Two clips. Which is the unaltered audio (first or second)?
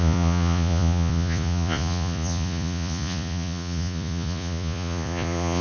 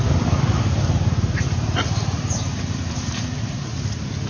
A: second